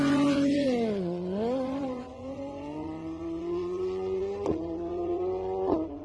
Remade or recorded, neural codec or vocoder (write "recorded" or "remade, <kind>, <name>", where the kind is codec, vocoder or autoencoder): remade, vocoder, Vocos